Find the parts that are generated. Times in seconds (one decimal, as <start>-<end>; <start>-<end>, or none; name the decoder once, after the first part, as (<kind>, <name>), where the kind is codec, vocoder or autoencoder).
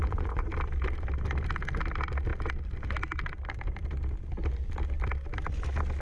0.0-0.5 (vocoder, Vocos)